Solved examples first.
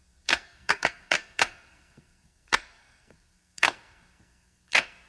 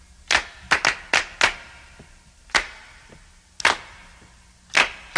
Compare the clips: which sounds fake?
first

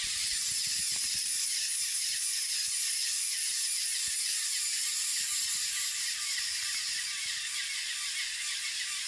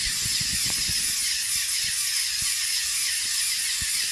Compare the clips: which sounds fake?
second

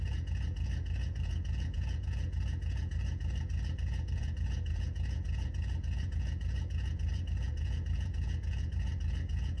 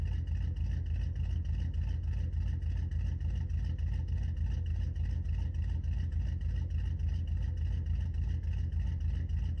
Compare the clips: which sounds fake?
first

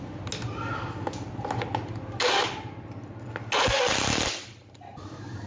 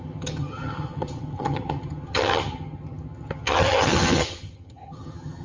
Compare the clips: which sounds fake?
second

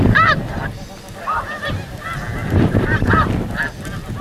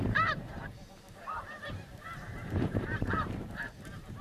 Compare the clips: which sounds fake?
second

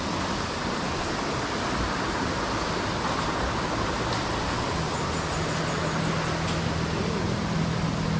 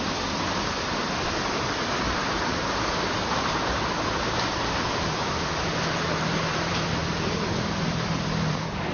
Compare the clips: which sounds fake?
second